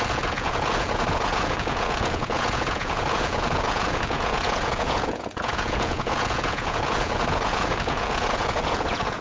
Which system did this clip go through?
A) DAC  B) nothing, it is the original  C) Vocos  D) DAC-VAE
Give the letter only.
C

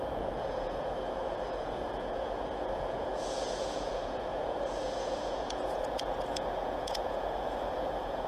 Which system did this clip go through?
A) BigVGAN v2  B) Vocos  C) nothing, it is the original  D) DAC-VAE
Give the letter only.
B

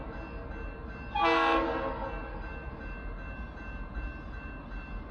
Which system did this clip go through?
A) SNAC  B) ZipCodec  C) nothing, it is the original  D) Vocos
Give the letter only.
C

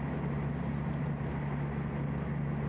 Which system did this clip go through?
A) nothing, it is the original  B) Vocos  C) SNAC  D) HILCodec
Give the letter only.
A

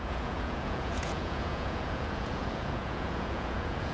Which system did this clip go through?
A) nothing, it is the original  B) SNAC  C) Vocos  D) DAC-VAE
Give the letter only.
C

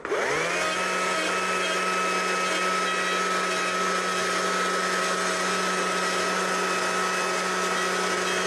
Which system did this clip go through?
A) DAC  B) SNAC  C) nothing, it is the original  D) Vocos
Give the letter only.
C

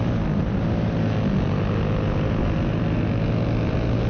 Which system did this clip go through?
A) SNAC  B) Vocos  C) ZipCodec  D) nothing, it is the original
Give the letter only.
D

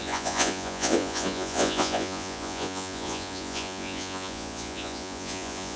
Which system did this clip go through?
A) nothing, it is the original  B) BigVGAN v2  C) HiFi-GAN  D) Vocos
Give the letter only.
D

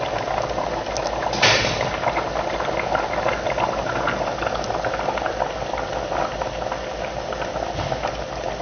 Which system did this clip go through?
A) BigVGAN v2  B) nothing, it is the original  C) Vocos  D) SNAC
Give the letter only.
B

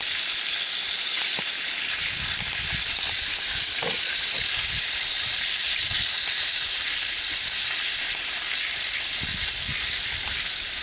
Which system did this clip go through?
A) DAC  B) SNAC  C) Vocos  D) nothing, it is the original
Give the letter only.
D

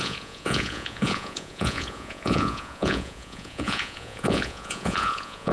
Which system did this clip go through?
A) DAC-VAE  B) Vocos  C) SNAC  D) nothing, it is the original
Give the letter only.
B